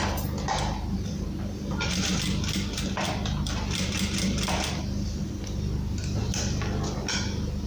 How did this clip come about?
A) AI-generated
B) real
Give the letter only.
B